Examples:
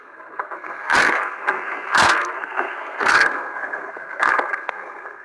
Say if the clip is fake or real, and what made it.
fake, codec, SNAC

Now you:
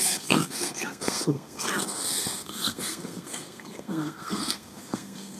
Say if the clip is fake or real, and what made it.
fake, codec, SNAC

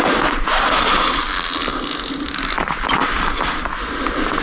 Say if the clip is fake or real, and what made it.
real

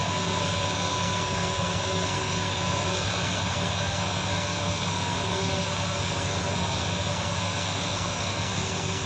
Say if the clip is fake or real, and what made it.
fake, codec, SNAC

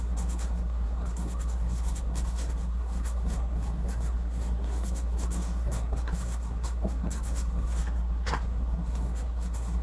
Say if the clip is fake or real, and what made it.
fake, codec, SNAC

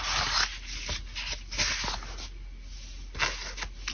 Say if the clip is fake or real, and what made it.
real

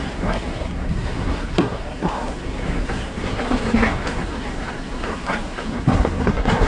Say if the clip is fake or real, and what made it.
fake, codec, SNAC